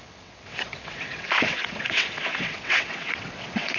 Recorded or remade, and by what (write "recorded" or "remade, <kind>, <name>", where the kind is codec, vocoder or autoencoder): remade, vocoder, WaveNeXt